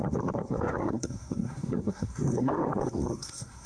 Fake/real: fake